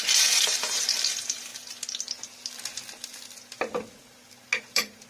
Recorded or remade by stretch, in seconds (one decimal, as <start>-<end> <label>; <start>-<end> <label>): 0.0-1.5 remade; 1.5-4.6 recorded; 4.6-5.1 remade